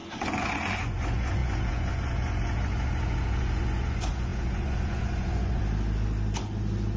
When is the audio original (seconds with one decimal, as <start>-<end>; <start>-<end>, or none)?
5.6-7.0